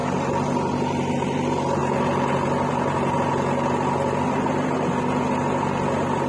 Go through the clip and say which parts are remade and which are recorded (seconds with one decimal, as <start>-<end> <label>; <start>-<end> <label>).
0.0-6.3 recorded